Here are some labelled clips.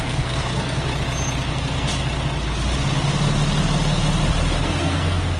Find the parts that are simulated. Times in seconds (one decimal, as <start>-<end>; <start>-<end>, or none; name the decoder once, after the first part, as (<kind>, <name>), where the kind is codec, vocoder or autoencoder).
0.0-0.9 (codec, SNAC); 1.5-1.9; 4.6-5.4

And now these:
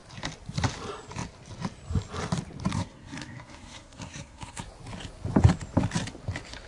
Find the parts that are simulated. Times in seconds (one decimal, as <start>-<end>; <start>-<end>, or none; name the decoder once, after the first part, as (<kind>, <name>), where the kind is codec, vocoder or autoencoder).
2.7-4.6 (codec, SNAC)

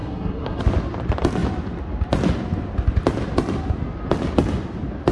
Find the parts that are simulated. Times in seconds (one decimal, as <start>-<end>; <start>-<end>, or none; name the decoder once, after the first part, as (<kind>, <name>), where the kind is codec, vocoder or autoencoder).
0.0-0.6 (codec, SNAC)

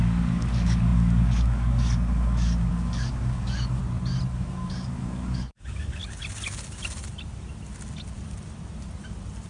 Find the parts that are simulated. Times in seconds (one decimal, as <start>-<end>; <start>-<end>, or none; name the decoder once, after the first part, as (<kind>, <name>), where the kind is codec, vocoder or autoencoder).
0.0-3.8 (codec, DAC); 4.3-6.0

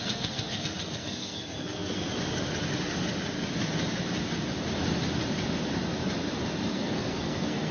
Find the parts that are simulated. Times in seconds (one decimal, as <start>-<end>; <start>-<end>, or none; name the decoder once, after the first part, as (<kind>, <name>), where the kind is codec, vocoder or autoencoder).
0.0-2.1 (codec, SNAC); 6.7-7.7

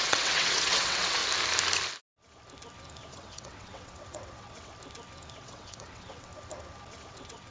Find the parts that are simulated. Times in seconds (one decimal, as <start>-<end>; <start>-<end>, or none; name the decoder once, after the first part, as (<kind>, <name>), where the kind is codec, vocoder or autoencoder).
0.0-1.2 (vocoder, WaveNeXt); 3.1-4.7; 5.4-6.3; 7.1-7.5

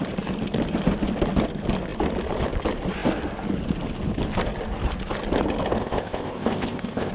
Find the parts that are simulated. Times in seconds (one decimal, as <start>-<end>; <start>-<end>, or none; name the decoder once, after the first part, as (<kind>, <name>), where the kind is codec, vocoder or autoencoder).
5.8-7.1 (codec, ZipCodec)

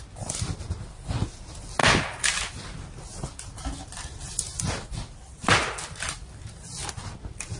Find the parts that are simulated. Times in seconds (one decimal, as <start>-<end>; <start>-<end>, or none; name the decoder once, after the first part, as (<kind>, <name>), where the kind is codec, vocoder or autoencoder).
none